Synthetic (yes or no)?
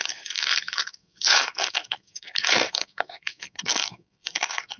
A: yes